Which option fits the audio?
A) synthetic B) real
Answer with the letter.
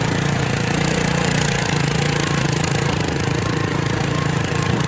A